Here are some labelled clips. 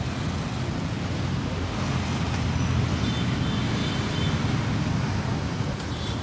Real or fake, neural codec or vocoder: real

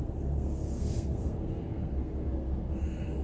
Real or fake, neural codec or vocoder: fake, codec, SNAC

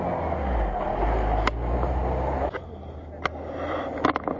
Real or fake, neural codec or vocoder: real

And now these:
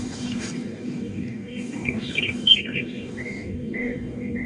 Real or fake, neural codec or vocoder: fake, codec, DAC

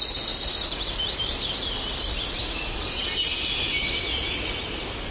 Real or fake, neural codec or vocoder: real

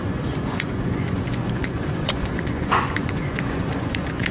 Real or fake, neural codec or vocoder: fake, vocoder, Vocos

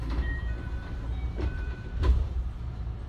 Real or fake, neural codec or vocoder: fake, vocoder, BigVGAN v2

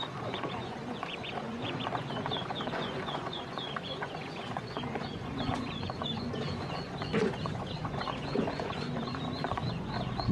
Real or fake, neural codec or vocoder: fake, vocoder, Vocos